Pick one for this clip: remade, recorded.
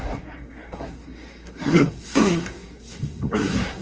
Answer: remade